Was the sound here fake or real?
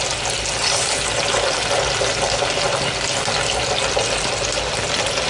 real